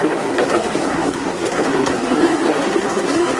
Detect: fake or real fake